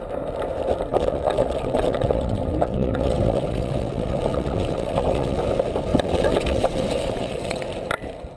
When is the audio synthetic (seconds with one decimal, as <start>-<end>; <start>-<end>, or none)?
0.9-5.4; 5.9-7.6